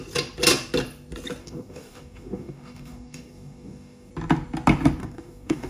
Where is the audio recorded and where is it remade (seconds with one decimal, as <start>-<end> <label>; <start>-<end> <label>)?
0.0-1.4 recorded; 1.4-4.1 remade; 4.1-5.0 recorded; 5.0-5.7 remade